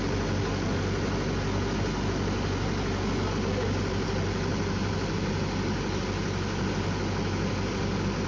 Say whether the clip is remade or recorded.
recorded